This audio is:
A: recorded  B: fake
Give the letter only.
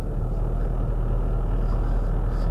A